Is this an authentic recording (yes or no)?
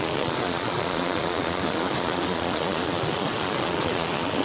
no